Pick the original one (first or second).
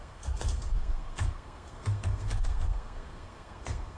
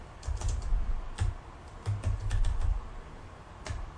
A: second